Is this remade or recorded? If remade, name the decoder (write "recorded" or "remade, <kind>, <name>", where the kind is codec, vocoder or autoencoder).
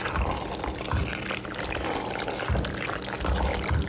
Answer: recorded